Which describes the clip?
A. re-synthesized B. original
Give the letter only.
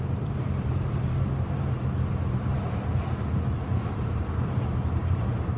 A